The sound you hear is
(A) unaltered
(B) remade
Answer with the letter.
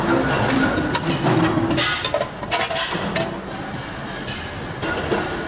A